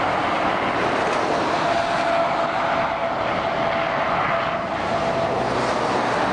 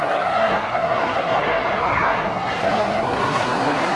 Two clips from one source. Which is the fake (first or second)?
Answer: second